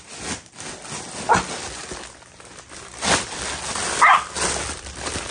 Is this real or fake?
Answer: real